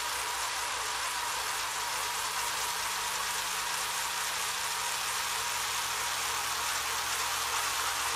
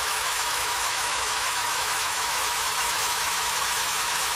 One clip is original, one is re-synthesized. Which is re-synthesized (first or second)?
second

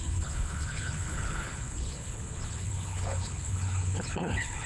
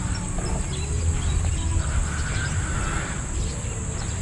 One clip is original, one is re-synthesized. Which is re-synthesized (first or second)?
first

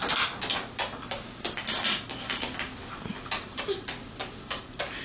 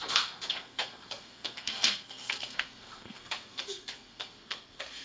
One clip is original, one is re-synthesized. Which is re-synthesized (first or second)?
second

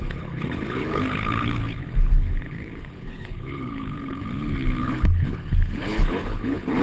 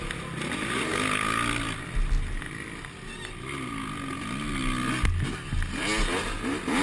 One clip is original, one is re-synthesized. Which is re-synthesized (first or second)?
first